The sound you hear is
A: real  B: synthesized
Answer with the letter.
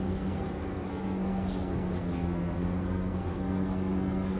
B